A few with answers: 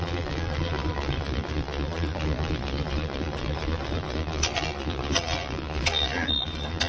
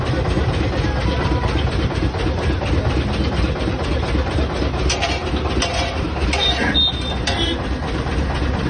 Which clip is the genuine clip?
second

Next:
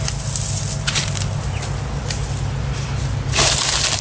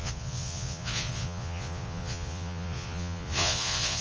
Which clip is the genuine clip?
first